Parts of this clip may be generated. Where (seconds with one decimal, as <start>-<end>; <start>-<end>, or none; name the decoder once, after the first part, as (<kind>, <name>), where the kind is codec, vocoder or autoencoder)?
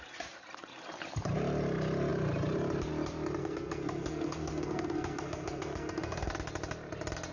3.4-6.3 (codec, SNAC)